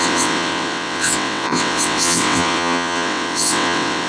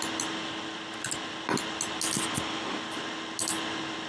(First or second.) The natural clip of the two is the second